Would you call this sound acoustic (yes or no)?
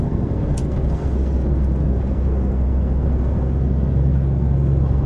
no